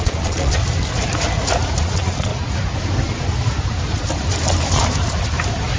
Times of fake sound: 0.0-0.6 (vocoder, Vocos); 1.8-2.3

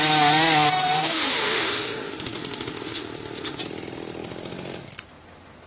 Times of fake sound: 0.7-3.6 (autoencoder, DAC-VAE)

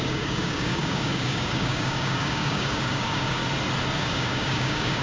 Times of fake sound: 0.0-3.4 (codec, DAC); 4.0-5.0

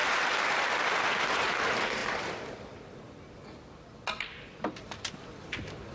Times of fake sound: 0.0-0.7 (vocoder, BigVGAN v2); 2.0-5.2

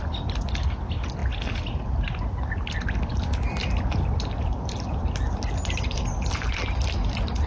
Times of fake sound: none

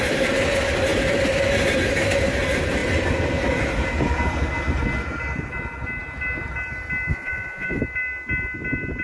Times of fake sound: 7.1-7.8 (vocoder, Vocos)

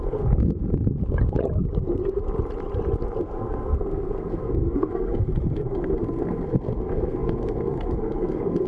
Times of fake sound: 0.0-1.0 (codec, SNAC); 3.2-8.7

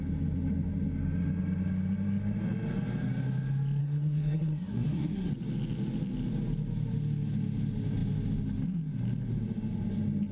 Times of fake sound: 3.8-5.3 (codec, SNAC)